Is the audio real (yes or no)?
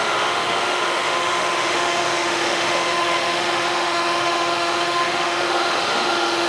no